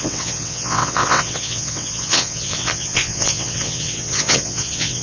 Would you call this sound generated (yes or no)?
yes